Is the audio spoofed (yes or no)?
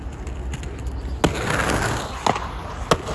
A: no